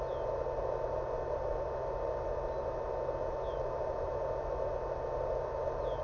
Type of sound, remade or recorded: recorded